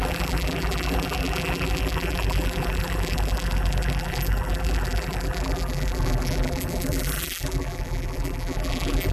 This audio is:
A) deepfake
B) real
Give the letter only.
A